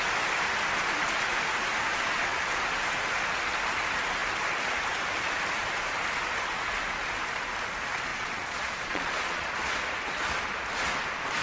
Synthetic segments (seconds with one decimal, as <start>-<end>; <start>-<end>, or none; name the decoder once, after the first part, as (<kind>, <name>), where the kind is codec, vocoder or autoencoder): 8.1-9.5 (vocoder, Vocos)